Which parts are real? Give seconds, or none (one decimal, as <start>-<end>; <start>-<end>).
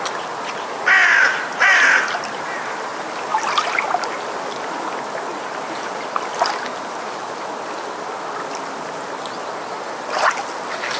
0.0-11.0